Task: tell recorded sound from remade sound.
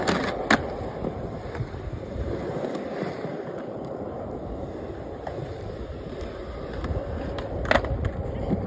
recorded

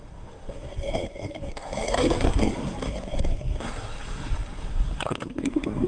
remade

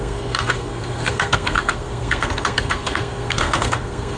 remade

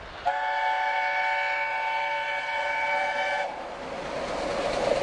recorded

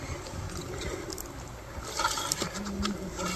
recorded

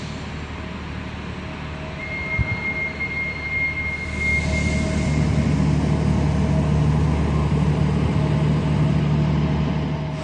recorded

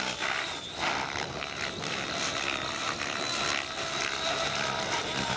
recorded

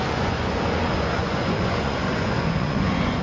remade